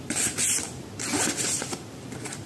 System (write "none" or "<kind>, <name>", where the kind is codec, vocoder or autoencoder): vocoder, BigVGAN v2